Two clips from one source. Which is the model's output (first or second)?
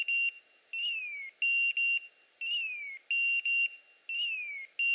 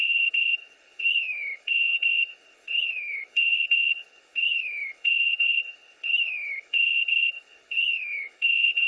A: second